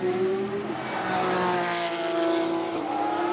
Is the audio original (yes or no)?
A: yes